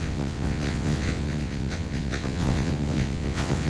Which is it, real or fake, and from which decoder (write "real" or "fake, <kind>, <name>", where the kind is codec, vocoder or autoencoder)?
fake, vocoder, WaveNeXt